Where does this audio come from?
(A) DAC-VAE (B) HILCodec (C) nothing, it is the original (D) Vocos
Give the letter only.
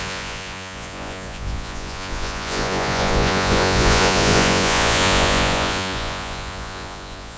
D